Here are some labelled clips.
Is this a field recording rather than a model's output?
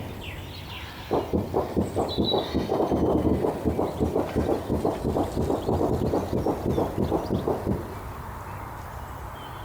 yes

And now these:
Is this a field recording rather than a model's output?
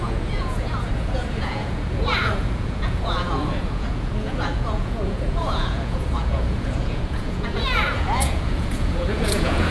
no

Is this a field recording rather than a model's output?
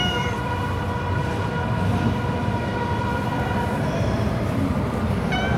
no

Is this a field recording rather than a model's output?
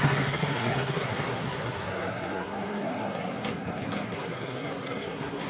no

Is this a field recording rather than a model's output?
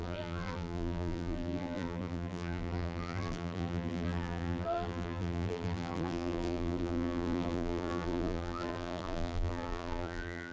no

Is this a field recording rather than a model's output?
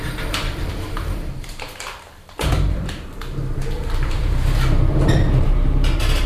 no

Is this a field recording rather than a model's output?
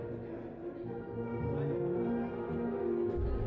yes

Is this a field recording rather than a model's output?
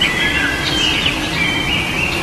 yes